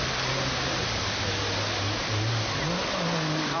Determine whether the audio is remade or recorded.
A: recorded